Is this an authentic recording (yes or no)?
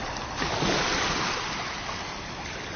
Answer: yes